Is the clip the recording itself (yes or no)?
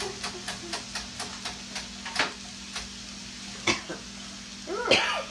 yes